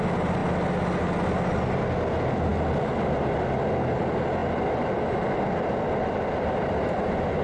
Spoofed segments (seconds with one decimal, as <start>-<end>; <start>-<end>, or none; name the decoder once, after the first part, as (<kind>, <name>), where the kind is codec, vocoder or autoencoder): none